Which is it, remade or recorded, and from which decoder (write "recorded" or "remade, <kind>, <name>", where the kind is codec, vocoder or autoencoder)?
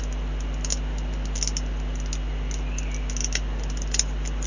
recorded